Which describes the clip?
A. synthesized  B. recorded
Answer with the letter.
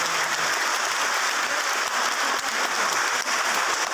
B